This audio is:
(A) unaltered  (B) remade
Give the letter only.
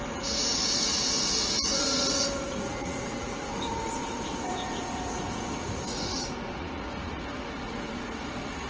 B